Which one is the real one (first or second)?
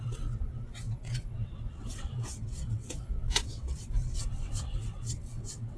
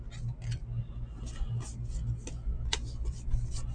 second